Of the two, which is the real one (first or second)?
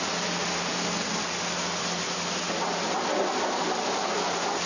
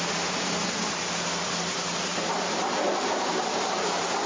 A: first